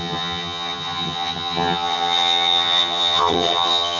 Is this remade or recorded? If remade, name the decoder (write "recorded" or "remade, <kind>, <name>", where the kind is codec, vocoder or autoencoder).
remade, vocoder, HiFi-GAN